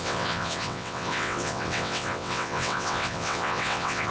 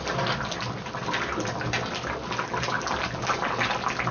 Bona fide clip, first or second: second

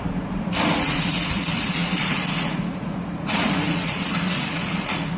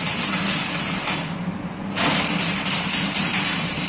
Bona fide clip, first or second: second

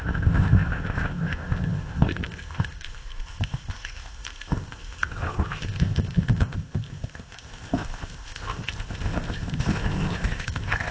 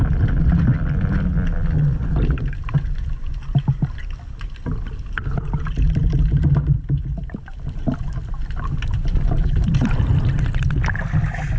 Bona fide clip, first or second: second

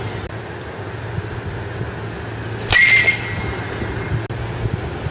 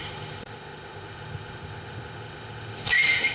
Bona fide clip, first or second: first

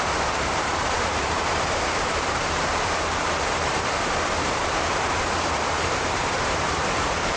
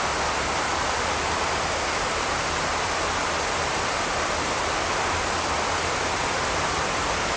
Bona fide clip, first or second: second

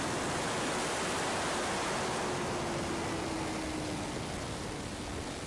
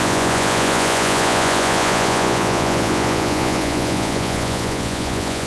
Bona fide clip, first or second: first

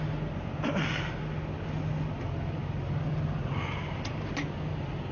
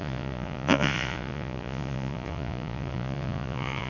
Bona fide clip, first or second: first